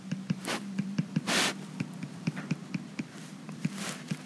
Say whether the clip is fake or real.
fake